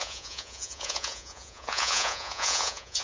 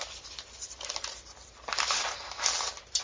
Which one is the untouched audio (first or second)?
second